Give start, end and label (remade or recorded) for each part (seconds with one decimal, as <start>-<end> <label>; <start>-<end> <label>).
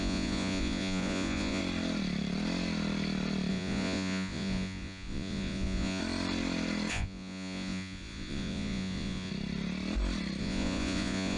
0.0-1.6 remade; 1.6-3.5 recorded; 3.5-6.0 remade; 6.0-6.9 recorded; 6.9-9.3 remade; 9.3-10.4 recorded; 10.4-11.4 remade